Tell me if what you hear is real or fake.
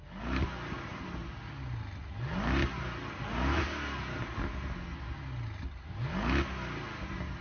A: real